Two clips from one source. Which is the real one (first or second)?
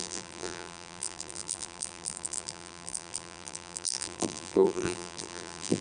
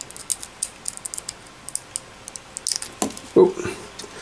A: second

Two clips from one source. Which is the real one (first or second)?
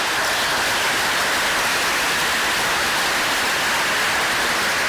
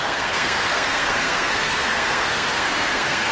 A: first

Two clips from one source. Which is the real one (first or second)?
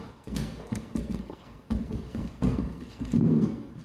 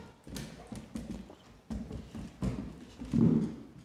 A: second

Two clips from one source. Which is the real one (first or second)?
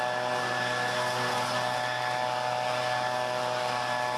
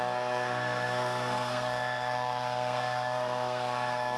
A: first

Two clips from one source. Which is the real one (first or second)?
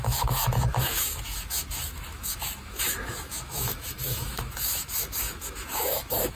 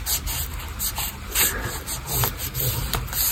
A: second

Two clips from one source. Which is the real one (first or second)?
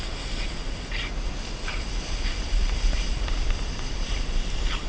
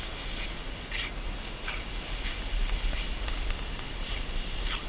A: second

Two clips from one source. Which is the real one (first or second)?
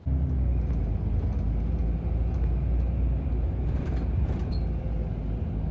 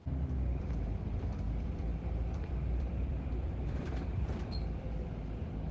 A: first